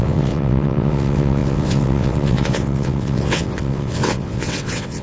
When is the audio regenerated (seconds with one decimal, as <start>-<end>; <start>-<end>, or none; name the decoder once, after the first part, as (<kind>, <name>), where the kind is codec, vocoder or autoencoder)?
0.0-5.0 (vocoder, WaveNeXt)